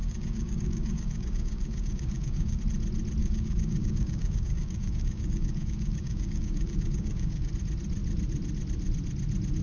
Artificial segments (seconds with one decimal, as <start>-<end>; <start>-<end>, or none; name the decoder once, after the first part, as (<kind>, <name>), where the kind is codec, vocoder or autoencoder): 0.0-2.6 (codec, DAC); 3.2-7.5